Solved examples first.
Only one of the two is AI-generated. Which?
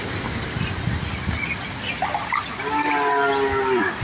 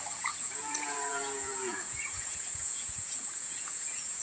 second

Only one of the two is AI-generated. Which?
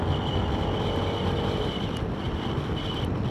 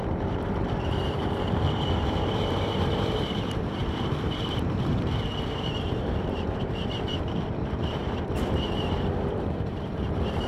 second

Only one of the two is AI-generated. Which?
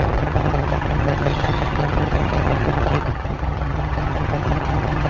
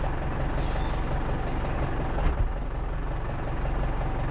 first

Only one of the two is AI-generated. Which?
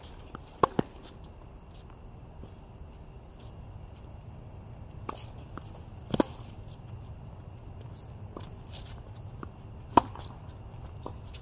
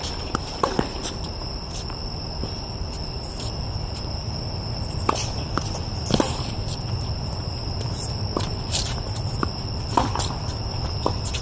second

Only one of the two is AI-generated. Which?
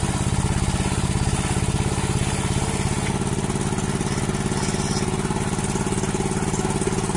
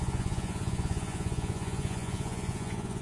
second